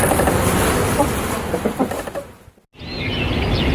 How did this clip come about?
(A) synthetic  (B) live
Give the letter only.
B